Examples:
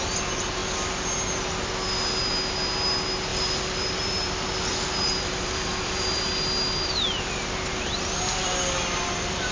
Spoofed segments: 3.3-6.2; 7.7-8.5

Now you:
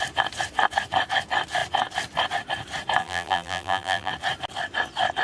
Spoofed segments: 3.0-4.1

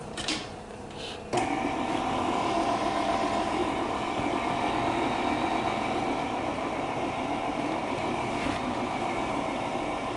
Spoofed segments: 0.0-1.1; 2.4-3.6; 6.1-10.2

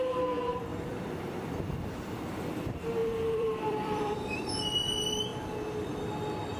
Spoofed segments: 0.7-1.3; 3.0-4.5; 5.3-6.0